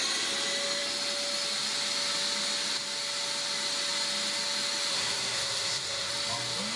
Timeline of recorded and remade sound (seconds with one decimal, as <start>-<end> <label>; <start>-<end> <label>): 0.0-4.9 recorded; 4.9-6.1 remade; 6.1-6.8 recorded